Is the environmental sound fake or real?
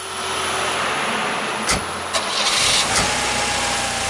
real